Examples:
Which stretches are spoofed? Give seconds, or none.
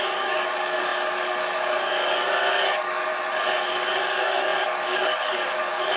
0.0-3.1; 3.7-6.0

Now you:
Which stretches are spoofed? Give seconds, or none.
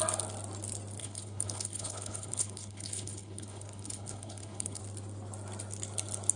1.0-4.8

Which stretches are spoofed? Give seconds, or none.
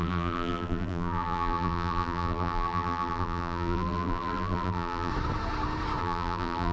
0.0-5.1; 6.0-6.7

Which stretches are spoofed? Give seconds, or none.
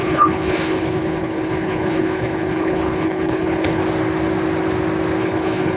0.0-3.8; 5.2-5.8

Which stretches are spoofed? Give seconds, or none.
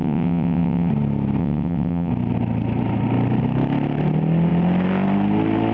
0.0-0.9; 1.4-2.1